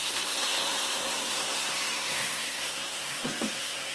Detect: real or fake fake